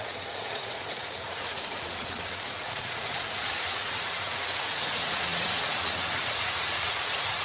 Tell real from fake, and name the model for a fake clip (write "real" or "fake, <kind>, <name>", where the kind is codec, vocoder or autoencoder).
fake, vocoder, Vocos